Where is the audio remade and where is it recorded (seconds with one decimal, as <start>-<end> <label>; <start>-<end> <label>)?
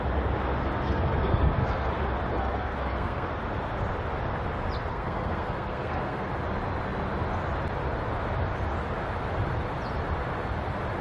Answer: 0.0-0.6 recorded; 0.6-1.9 remade; 1.9-2.3 recorded; 2.3-3.3 remade; 3.3-4.9 recorded; 4.9-6.3 remade; 6.3-11.0 recorded